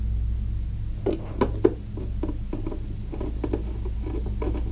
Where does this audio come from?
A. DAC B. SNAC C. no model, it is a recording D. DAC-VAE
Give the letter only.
C